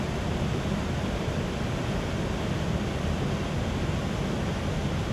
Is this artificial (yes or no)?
no